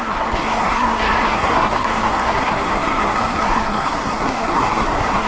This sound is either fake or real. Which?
fake